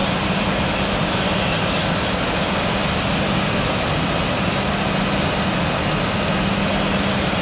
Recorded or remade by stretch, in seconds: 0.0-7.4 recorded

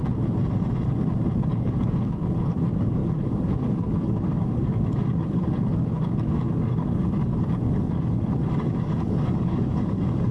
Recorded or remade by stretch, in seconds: 0.0-1.4 recorded; 1.4-10.3 remade

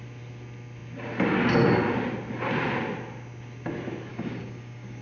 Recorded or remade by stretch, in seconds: 0.0-4.1 recorded; 4.1-5.0 remade